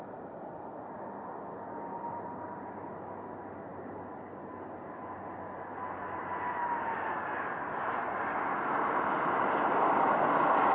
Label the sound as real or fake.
real